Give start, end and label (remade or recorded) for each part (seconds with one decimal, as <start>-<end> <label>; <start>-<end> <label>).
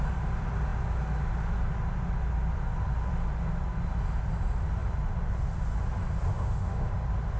0.0-6.3 recorded; 6.3-6.9 remade; 6.9-7.4 recorded